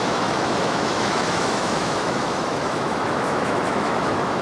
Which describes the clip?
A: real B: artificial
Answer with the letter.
B